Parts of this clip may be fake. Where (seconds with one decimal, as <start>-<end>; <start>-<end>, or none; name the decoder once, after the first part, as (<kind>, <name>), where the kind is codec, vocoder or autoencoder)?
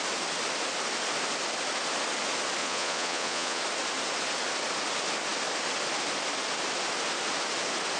2.6-3.6 (vocoder, Vocos)